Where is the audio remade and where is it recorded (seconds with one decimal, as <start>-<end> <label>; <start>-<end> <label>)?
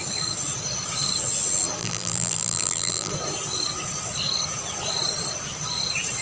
0.0-1.8 recorded; 1.8-3.1 remade; 3.1-6.2 recorded